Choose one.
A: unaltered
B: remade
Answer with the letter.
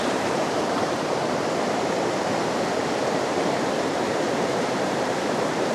B